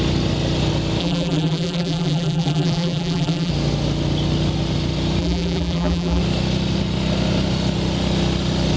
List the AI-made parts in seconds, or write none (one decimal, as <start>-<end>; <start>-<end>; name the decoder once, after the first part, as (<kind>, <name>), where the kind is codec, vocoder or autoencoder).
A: 1.0-3.5 (vocoder, BigVGAN v2); 5.2-6.2